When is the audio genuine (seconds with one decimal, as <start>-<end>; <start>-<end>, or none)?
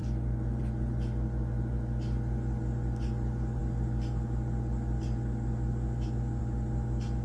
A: 0.0-7.2